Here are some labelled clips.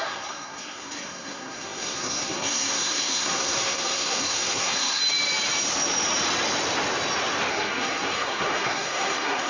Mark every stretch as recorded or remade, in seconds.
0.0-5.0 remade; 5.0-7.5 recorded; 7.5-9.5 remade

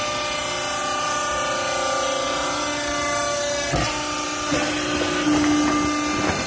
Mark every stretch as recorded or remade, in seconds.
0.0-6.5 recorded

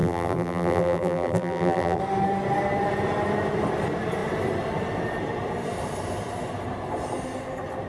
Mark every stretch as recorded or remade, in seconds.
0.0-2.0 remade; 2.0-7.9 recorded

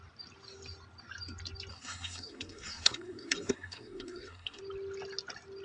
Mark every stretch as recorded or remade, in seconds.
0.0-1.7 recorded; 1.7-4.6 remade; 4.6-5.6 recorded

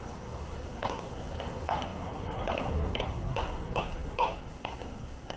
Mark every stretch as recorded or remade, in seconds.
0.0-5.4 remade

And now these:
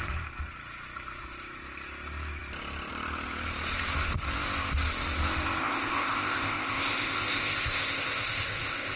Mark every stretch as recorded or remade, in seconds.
0.0-5.6 recorded; 5.6-9.0 remade

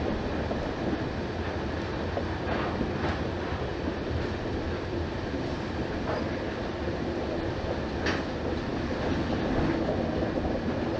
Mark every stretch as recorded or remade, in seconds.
0.0-3.7 recorded; 3.7-6.6 remade; 6.6-11.0 recorded

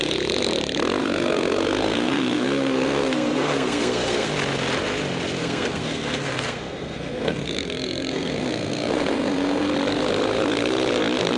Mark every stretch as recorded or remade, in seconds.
0.0-1.0 recorded; 1.0-4.3 remade; 4.3-5.4 recorded; 5.4-9.7 remade; 9.7-11.4 recorded